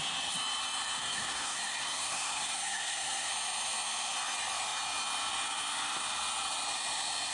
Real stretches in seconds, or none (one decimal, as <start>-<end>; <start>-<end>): 0.0-1.0; 3.3-7.3